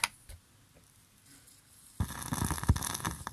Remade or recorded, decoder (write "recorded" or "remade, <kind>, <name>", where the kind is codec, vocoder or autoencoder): recorded